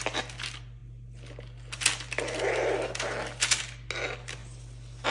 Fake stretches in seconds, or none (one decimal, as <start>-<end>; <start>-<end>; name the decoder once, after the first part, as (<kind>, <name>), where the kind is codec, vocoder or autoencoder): none